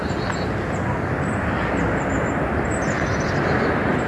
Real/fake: real